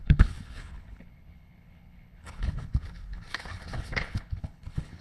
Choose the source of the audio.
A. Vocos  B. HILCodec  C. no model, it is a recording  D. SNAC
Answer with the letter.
B